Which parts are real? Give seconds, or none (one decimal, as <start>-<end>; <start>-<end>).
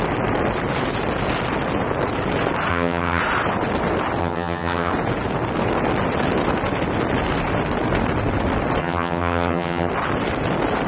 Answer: 0.0-2.7; 3.2-4.2; 4.9-8.8; 9.9-10.9